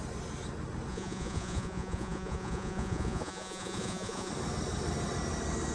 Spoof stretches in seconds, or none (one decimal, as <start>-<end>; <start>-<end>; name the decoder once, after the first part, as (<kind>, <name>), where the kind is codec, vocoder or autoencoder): 0.9-4.3 (vocoder, Vocos)